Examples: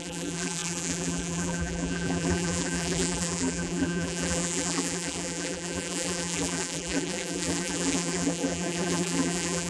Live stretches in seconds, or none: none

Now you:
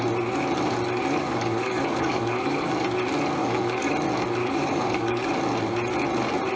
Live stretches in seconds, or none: 0.0-1.2; 2.7-3.4; 3.9-4.4; 5.3-6.6

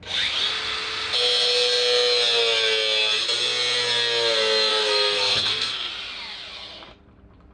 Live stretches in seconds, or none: 0.0-4.7; 5.9-7.5

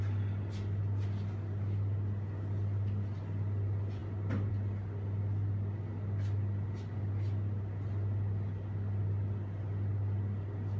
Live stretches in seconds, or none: 0.0-10.8